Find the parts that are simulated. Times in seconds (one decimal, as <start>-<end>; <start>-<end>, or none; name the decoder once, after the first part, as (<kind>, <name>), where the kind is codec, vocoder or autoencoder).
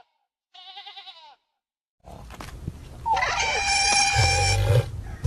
none